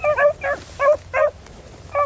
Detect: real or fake real